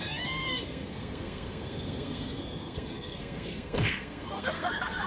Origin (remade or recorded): remade